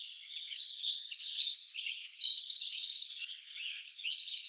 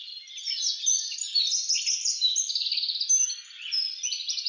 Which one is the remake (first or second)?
first